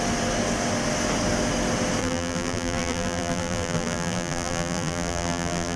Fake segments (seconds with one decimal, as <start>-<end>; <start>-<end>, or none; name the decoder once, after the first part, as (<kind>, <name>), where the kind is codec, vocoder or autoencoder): 2.0-5.8 (vocoder, BigVGAN v2)